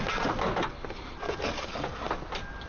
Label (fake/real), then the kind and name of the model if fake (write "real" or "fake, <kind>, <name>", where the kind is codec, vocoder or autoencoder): real